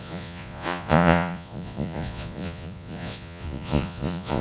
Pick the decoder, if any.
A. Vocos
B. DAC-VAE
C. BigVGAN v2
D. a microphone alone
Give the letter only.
A